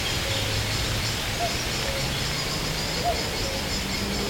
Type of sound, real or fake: real